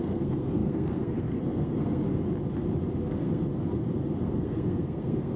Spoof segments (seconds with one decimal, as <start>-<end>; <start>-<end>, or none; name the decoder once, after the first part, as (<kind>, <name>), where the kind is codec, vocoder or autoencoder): 0.0-2.2 (codec, SNAC); 3.0-3.4; 4.2-5.4